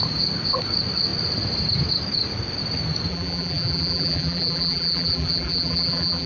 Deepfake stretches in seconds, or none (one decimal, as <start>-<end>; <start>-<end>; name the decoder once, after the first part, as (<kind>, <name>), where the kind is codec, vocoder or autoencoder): 3.1-6.3 (vocoder, BigVGAN v2)